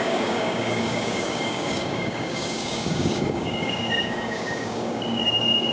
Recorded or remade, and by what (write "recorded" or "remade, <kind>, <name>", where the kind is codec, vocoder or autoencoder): remade, codec, DAC